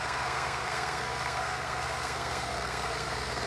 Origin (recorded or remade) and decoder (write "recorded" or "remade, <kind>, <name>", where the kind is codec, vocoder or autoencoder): remade, codec, SNAC